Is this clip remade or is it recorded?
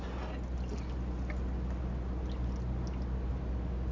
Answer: recorded